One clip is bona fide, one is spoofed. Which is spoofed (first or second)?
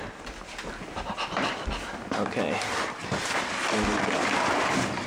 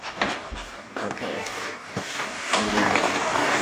second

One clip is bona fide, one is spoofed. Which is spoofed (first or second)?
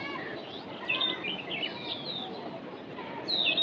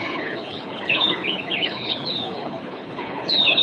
second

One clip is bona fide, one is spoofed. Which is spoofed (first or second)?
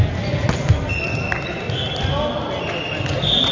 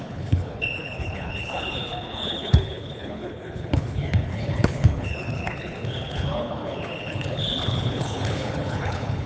second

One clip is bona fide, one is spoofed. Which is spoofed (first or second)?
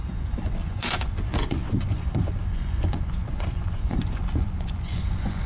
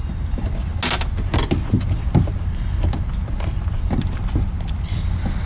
first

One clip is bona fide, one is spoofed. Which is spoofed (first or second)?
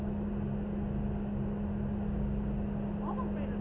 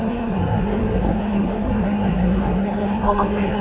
second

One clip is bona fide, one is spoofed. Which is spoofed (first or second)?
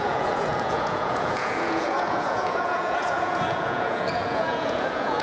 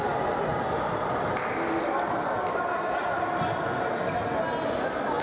first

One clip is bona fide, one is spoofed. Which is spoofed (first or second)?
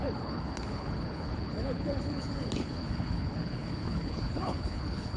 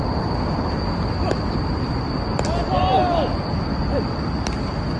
first